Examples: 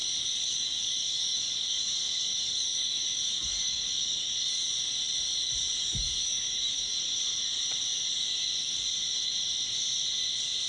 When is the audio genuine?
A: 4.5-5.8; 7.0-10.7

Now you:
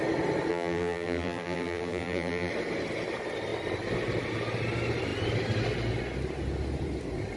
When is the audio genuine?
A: 0.0-0.5; 2.5-7.4

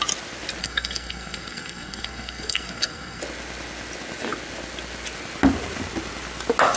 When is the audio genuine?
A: 0.0-0.6; 3.2-6.8

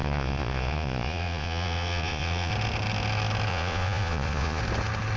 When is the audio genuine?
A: 2.5-3.5; 4.6-5.2

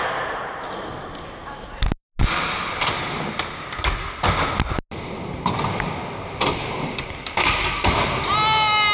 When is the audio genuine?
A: 0.0-8.9

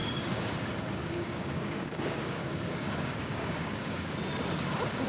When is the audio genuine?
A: 0.6-1.0; 4.1-5.1

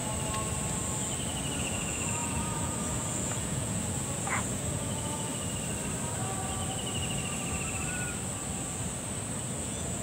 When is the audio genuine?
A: 0.0-1.6; 5.3-9.6

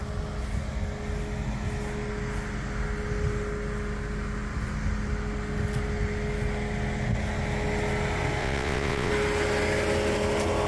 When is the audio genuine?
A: 0.0-8.4; 9.1-10.7